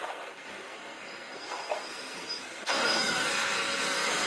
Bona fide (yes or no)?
no